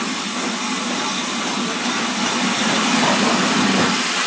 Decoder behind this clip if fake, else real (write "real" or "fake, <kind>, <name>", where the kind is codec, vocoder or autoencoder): real